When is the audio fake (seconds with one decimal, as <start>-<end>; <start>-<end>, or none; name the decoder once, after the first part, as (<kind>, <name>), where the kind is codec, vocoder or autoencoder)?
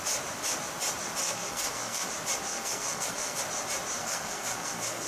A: 1.2-2.1 (codec, SNAC); 2.5-3.4; 4.0-5.1